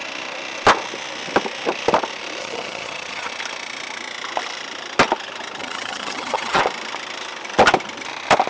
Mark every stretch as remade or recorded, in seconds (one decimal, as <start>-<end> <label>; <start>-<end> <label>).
0.0-2.4 recorded; 2.4-3.3 remade; 3.3-5.6 recorded; 5.6-6.6 remade; 6.6-8.5 recorded